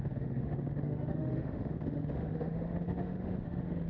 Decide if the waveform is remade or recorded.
remade